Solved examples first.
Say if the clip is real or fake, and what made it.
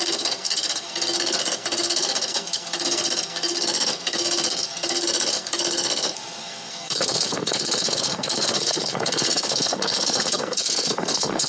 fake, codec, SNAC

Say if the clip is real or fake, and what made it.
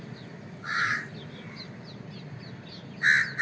real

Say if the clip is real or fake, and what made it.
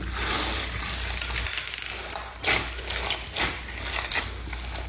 real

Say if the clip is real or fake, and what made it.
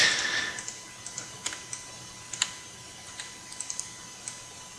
real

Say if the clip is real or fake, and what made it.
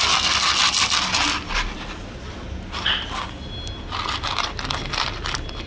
real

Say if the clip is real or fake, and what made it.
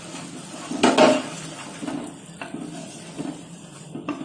real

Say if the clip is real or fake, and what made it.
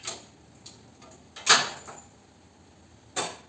real